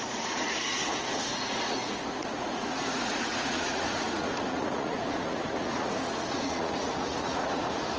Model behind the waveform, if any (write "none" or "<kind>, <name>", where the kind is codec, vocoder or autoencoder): vocoder, Vocos